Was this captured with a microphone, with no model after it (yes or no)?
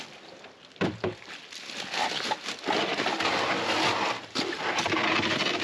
yes